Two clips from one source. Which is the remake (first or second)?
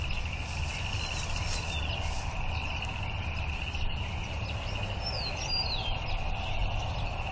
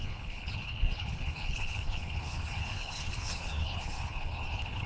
second